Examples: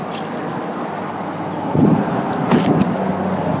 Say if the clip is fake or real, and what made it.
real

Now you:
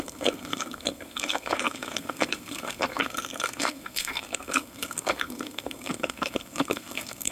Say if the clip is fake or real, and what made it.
fake, codec, SNAC